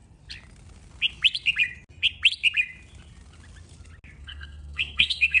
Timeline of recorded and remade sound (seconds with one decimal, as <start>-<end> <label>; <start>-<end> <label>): 0.0-4.2 recorded; 4.2-5.4 remade